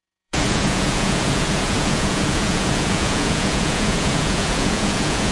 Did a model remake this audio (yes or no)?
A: yes